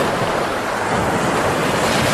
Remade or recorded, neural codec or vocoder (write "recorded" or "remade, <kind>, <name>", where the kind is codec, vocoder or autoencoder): recorded